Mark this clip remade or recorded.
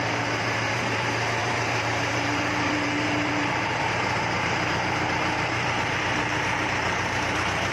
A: remade